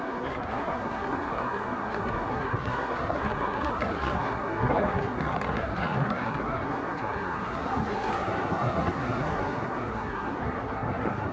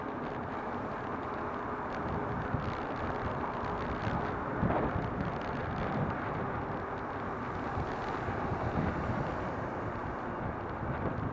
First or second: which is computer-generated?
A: first